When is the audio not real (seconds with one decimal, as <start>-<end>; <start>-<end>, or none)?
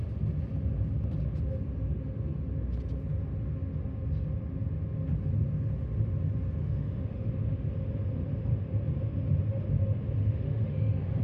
6.6-7.3; 10.2-11.2